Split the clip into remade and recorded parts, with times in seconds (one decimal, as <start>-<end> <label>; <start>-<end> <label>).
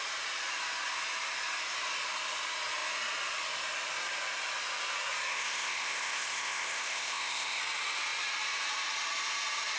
0.0-5.3 recorded; 5.3-7.6 remade; 7.6-9.8 recorded